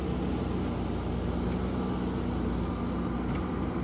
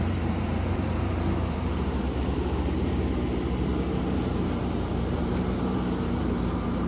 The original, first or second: first